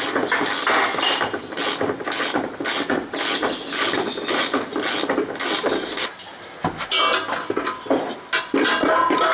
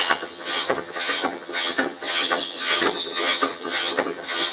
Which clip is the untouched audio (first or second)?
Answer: first